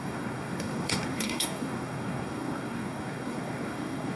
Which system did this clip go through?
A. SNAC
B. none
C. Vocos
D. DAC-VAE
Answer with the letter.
A